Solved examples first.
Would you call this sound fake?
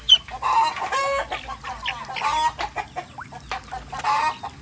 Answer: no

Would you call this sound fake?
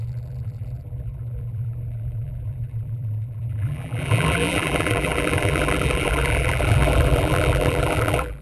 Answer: yes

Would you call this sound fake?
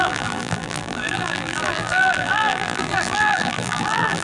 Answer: yes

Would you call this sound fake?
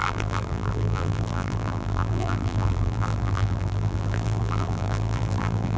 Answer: yes